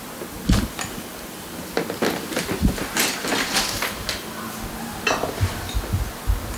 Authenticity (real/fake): real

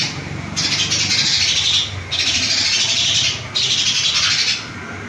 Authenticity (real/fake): real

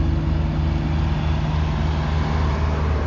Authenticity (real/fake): real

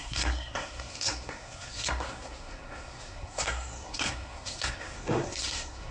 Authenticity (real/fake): fake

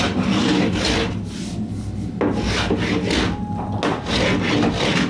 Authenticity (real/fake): real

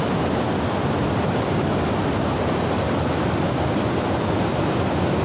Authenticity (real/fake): real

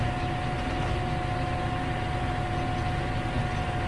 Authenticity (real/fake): real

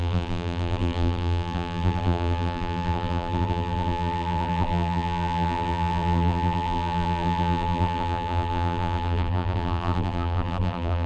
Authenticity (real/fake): fake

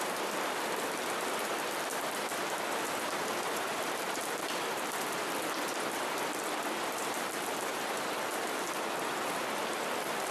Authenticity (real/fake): fake